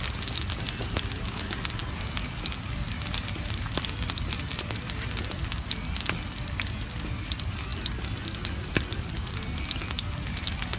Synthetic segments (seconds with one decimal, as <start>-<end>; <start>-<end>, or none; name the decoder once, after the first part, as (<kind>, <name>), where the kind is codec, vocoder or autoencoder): none